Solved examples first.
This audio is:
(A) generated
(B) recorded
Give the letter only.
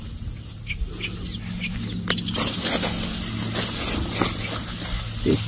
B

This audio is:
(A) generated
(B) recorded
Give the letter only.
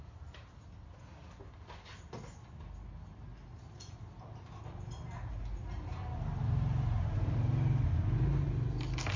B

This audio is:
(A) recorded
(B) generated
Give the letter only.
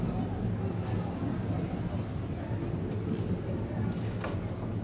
A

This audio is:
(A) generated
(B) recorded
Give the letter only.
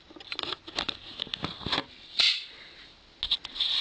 B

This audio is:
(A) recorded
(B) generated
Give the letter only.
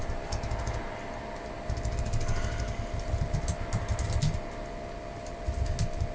A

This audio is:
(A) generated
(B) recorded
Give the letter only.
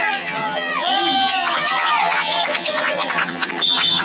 A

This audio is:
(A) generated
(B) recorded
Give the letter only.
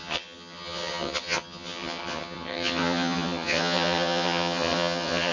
A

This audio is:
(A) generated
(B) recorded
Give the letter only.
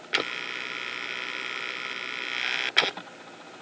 B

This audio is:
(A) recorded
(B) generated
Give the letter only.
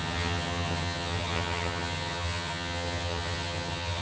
B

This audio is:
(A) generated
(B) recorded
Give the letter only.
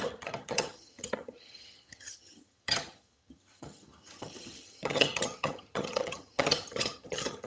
A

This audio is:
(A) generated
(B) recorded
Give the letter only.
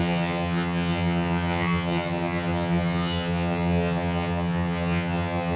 A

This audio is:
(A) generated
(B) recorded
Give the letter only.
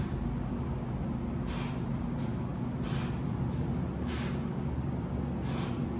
B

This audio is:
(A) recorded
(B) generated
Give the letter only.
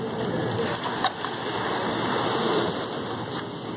A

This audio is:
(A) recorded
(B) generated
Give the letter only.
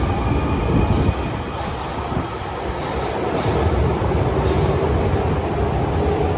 A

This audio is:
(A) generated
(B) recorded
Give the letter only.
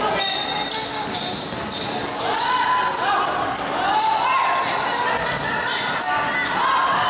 B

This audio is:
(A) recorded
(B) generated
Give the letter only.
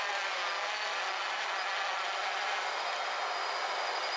A